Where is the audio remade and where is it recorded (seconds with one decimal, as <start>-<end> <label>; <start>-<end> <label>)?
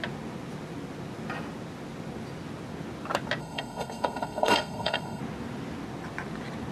0.0-3.4 recorded; 3.4-5.2 remade; 5.2-6.7 recorded